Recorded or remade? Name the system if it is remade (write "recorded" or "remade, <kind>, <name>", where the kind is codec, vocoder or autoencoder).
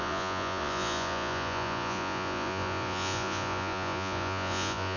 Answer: remade, vocoder, Vocos